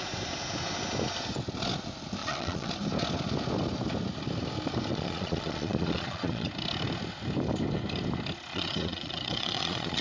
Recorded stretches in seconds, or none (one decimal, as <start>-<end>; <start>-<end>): 0.0-2.2; 2.7-4.9; 6.5-8.5